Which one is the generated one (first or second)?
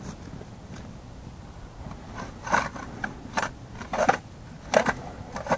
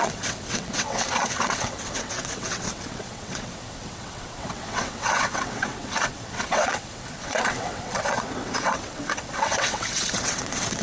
second